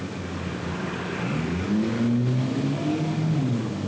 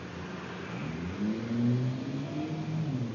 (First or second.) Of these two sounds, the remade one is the first